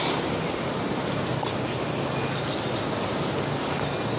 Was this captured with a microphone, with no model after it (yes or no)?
yes